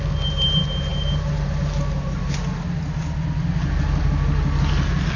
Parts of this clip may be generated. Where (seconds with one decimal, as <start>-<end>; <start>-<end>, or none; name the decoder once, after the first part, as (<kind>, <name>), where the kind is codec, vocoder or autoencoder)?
none